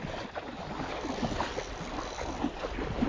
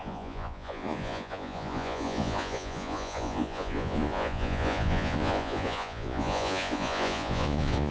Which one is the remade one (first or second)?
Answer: second